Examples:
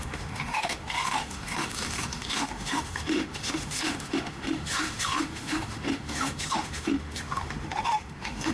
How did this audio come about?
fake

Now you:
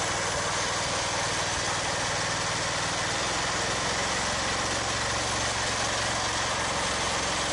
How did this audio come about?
real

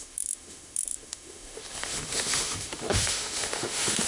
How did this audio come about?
fake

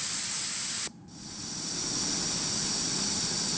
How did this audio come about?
real